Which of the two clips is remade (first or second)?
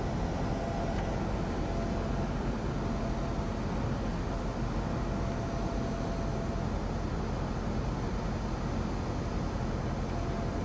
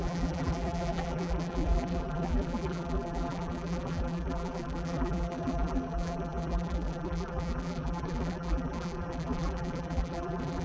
second